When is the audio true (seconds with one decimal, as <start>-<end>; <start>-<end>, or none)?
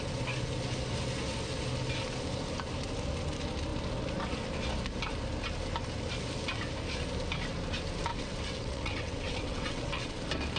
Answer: 0.0-8.1; 10.2-10.6